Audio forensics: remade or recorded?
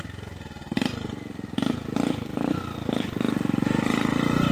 recorded